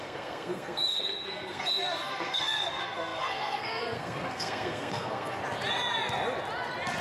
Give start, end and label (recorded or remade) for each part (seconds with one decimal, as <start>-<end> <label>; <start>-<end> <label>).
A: 0.0-5.4 remade; 5.4-7.0 recorded

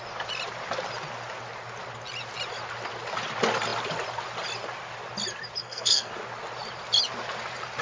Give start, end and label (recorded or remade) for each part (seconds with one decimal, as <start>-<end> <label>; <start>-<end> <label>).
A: 0.0-5.6 recorded; 5.6-6.1 remade; 6.1-7.8 recorded